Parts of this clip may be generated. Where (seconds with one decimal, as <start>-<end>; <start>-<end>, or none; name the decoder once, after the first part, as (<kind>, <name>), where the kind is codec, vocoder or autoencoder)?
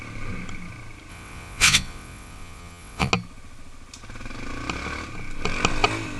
1.1-3.1 (vocoder, WaveNeXt)